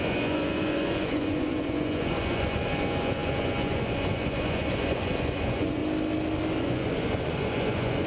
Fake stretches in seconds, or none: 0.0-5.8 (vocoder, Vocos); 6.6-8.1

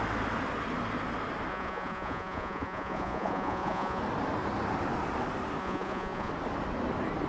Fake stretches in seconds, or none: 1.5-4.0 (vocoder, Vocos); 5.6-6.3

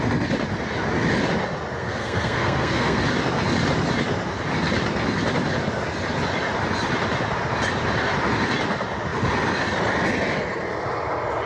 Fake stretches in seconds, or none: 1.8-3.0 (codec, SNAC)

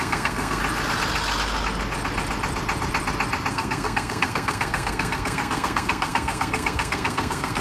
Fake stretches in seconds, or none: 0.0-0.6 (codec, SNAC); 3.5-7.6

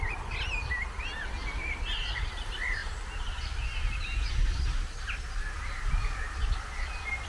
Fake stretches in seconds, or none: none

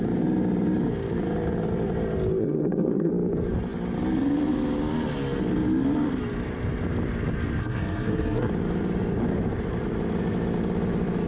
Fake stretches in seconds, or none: 2.4-3.1 (codec, SNAC); 7.6-8.5